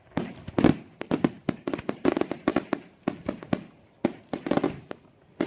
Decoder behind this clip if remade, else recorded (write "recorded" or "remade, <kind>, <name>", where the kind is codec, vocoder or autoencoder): recorded